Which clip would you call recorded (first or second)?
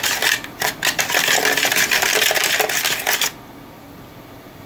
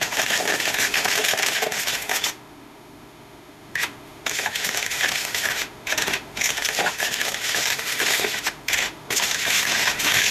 first